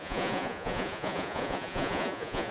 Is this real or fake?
fake